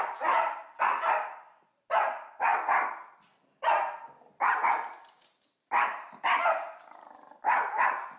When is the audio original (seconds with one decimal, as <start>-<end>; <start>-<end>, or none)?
none